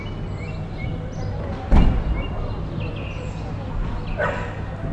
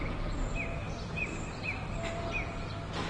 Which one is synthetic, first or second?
second